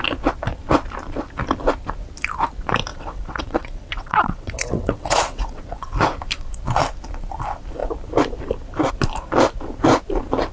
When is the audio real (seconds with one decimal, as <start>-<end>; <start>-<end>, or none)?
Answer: 0.0-2.9; 5.9-10.5